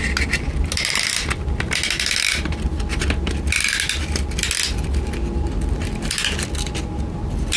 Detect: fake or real real